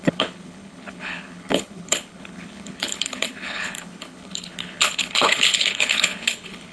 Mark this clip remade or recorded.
remade